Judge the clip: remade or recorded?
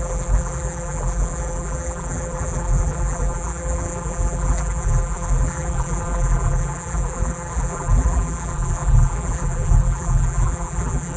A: remade